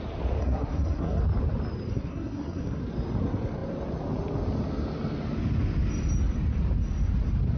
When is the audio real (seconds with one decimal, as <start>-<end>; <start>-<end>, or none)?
0.0-0.4; 1.2-1.9; 2.8-7.6